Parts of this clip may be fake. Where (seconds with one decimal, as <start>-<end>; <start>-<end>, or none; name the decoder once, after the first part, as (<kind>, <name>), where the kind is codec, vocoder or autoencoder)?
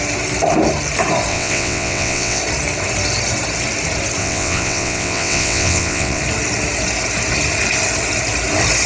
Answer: 1.3-2.4 (vocoder, WaveNeXt); 4.2-6.2